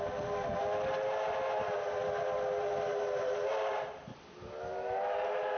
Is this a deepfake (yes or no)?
no